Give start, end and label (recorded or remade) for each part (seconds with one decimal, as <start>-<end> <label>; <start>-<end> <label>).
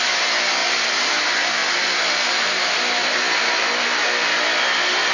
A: 0.0-0.6 recorded; 0.6-1.2 remade; 1.2-1.6 recorded; 1.6-3.7 remade; 3.7-5.1 recorded